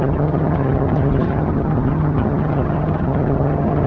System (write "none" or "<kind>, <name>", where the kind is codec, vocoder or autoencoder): vocoder, HiFi-GAN